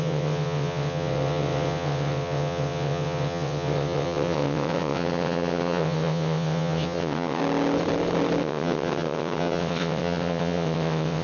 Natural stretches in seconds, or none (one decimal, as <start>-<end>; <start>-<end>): 7.4-8.4